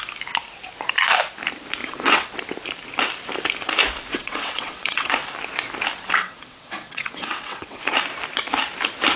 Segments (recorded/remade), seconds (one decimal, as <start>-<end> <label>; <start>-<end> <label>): 0.0-1.8 recorded; 1.8-2.3 remade; 2.3-4.1 recorded; 4.1-5.1 remade; 5.1-6.2 recorded; 6.2-7.8 remade; 7.8-9.2 recorded